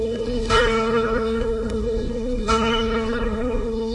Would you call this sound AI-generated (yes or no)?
yes